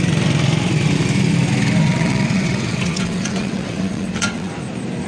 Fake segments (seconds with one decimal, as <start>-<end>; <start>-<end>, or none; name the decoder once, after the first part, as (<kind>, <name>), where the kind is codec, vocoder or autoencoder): 1.8-4.5 (vocoder, WaveNeXt)